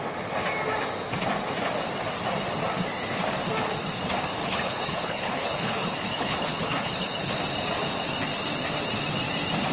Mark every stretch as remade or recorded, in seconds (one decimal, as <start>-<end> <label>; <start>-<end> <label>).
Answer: 0.0-4.4 recorded; 4.4-7.3 remade; 7.3-9.7 recorded